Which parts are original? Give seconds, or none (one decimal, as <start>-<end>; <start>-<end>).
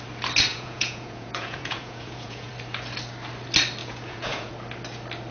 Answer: 0.0-0.5; 2.5-3.8; 4.5-5.3